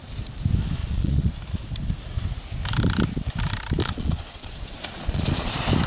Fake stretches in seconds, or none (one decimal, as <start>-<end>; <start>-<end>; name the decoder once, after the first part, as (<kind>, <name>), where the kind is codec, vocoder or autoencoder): 0.8-1.3 (vocoder, Vocos); 3.8-5.5

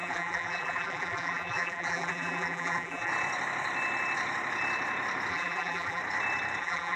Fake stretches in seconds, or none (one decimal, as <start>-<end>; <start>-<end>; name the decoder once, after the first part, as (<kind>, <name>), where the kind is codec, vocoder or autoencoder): 0.0-3.1 (vocoder, BigVGAN v2); 5.3-6.0; 6.6-7.0

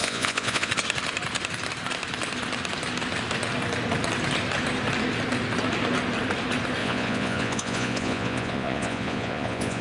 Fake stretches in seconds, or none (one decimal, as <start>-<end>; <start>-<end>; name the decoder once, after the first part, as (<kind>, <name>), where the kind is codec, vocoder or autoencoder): 0.0-0.7 (vocoder, Vocos); 6.8-9.8

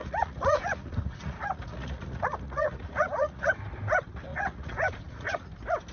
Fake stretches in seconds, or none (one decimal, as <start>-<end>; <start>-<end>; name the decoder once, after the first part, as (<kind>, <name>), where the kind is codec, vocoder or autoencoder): 0.0-3.5 (vocoder, Vocos); 4.3-5.5